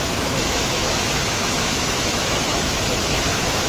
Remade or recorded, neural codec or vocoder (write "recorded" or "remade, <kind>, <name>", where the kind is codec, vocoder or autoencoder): remade, autoencoder, DAC-VAE